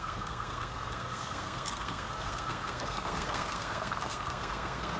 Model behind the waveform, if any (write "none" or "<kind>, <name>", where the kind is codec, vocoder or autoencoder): codec, SNAC